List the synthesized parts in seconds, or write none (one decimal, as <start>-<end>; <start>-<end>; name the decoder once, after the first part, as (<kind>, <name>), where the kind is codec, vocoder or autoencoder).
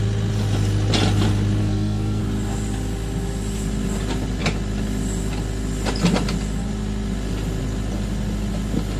1.6-2.2 (codec, SNAC)